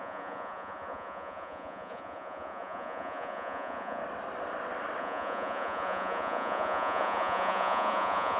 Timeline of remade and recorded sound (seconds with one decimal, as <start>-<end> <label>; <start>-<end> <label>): 0.0-4.0 remade; 4.0-5.0 recorded; 5.0-8.4 remade